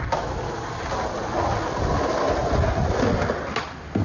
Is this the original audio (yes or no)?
yes